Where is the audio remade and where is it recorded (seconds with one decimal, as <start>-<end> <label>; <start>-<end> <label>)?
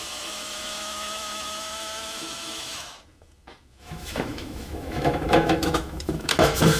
0.0-6.8 remade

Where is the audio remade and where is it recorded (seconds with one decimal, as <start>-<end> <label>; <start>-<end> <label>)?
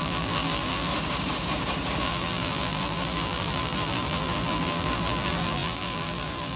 0.0-0.9 remade; 0.9-2.0 recorded; 2.0-6.6 remade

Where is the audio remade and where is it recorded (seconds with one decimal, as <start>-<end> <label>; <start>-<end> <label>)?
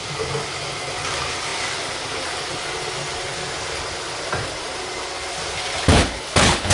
0.0-5.9 recorded; 5.9-6.7 remade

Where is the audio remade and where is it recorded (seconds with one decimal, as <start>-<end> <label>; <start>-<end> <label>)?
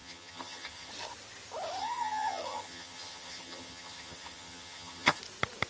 0.0-0.9 remade; 0.9-1.8 recorded; 1.8-5.2 remade; 5.2-5.7 recorded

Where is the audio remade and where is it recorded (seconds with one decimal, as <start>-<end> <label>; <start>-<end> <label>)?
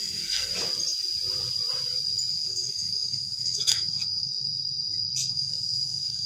0.0-0.5 remade; 0.5-2.3 recorded; 2.3-4.3 remade; 4.3-5.3 recorded; 5.3-6.3 remade